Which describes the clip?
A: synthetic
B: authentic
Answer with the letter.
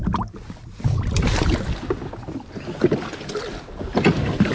B